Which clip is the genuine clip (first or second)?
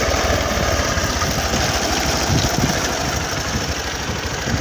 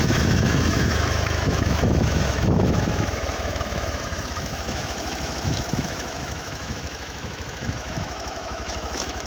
first